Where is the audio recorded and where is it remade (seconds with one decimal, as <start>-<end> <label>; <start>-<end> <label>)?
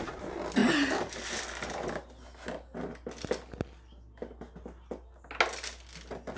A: 0.0-6.4 recorded